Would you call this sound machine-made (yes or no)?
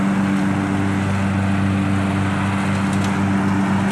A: no